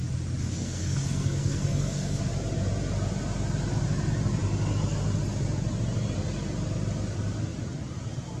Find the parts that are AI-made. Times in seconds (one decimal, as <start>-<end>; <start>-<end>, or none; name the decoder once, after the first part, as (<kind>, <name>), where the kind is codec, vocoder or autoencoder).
0.4-2.2 (codec, SNAC)

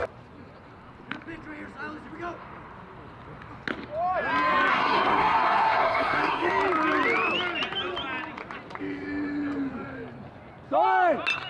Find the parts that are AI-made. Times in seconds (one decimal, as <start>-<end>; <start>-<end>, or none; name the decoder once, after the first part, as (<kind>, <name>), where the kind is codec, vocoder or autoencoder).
4.7-6.5 (codec, SNAC)

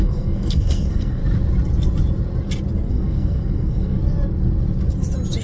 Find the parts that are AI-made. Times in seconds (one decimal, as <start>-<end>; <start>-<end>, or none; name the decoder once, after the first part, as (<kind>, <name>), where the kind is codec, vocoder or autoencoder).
0.0-1.2 (codec, SNAC); 2.9-4.0

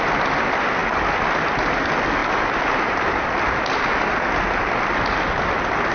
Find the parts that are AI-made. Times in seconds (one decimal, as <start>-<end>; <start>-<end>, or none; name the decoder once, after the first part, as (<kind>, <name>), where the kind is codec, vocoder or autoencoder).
none